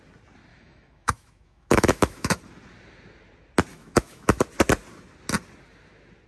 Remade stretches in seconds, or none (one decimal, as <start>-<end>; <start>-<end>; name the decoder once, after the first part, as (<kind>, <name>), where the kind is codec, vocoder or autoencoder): 0.5-2.4 (autoencoder, DAC-VAE); 3.7-4.4